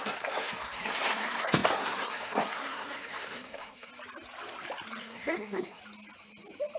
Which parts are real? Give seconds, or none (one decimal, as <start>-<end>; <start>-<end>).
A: 3.9-5.0; 5.8-6.8